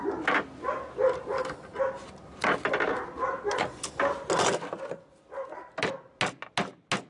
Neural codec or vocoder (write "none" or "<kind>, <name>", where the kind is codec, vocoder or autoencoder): none